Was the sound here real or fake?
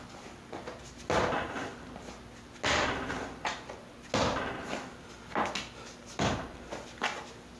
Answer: real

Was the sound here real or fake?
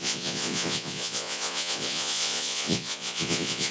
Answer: fake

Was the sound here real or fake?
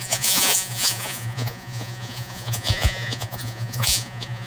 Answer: fake